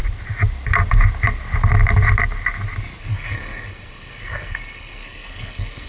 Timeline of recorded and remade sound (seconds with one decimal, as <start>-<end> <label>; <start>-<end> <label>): 0.0-3.0 recorded; 3.0-5.9 remade